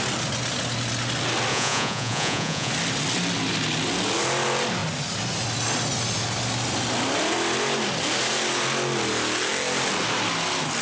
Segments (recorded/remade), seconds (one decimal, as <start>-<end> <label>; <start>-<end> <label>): 0.0-1.5 recorded; 1.5-2.7 remade; 2.7-10.8 recorded